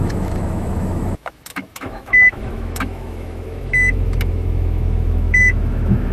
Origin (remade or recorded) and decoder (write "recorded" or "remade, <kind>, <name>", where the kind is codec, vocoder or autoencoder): remade, autoencoder, DAC-VAE